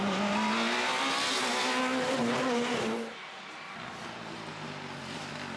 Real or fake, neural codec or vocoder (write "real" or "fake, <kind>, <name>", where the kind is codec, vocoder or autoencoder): real